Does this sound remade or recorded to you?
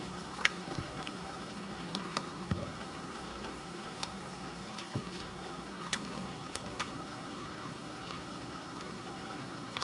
remade